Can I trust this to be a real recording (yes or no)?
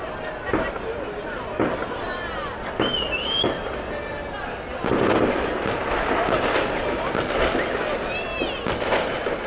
yes